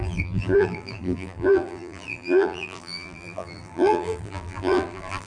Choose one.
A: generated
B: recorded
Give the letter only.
A